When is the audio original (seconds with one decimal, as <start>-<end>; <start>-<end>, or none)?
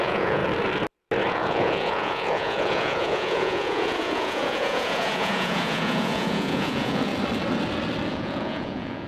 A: 0.4-1.3; 7.1-8.1